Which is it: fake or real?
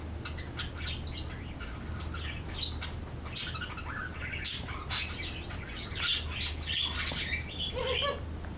real